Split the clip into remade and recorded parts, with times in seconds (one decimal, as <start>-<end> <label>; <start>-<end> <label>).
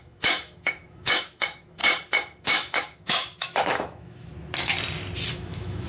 0.0-1.8 remade; 1.8-2.4 recorded; 2.4-4.3 remade; 4.3-5.3 recorded; 5.3-5.9 remade